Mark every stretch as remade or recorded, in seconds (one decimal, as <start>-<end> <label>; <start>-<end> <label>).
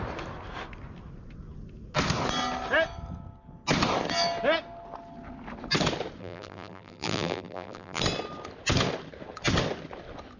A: 0.0-6.2 recorded; 6.2-8.0 remade; 8.0-10.4 recorded